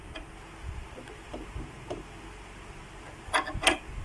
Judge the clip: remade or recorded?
recorded